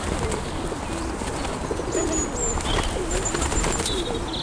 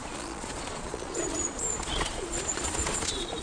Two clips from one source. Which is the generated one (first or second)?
second